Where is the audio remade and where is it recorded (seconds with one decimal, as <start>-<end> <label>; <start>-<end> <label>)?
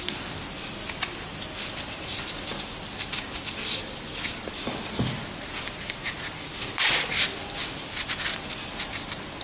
0.0-9.4 recorded